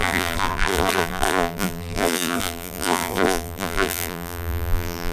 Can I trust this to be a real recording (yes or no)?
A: no